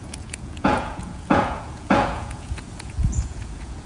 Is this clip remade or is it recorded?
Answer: remade